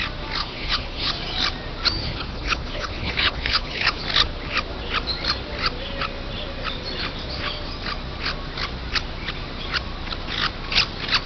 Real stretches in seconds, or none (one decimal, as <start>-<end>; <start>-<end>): 0.0-0.4; 1.1-2.0; 4.0-11.3

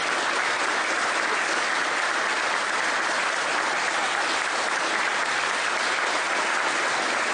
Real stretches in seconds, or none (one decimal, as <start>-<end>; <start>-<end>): 0.0-7.3

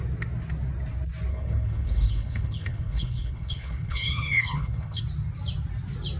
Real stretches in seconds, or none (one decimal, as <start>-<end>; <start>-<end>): 0.0-1.3; 5.0-6.2